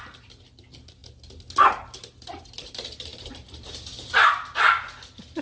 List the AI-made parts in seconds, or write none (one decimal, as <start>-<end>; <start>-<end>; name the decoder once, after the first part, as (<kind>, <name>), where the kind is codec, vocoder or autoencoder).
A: 3.1-3.7 (vocoder, BigVGAN v2)